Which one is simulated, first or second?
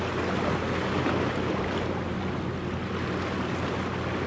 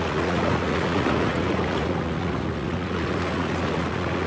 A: second